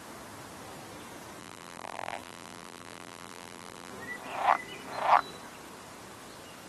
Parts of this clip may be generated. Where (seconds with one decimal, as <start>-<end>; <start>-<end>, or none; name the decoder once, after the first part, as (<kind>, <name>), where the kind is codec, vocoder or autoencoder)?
1.4-3.9 (vocoder, BigVGAN v2)

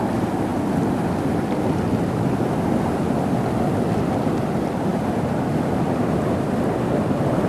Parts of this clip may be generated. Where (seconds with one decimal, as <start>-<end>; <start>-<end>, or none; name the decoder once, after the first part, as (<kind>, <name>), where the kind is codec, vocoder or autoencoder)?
none

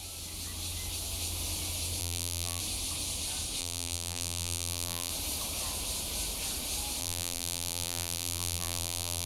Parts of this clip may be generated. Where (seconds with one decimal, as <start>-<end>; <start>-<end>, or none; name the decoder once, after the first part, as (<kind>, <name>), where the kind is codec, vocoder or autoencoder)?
2.0-2.6 (vocoder, BigVGAN v2); 3.6-5.1; 7.0-9.3

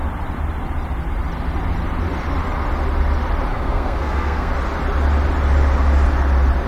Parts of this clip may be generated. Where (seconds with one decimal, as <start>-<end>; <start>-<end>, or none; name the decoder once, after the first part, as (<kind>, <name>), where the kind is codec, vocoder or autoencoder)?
3.5-4.5 (codec, SNAC)

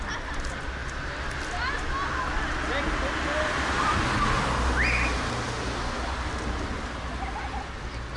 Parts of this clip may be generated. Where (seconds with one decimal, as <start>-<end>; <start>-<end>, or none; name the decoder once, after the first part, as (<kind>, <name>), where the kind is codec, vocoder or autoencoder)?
none

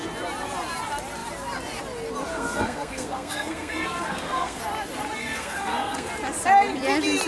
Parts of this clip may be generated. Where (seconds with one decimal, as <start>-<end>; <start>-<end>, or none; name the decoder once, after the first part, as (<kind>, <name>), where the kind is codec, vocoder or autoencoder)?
2.3-4.6 (codec, SNAC); 5.2-6.1

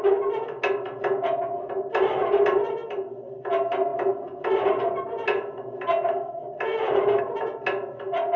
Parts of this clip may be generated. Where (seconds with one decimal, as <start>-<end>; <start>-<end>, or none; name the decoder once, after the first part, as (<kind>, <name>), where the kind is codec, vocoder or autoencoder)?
none

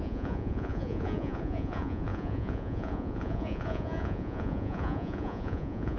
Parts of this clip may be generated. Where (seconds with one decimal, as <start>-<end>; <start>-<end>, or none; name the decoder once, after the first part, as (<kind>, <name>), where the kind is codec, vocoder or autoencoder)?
0.0-6.0 (vocoder, Vocos)